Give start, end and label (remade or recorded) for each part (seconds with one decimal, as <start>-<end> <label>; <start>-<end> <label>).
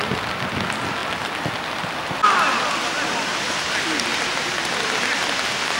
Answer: 0.0-5.8 recorded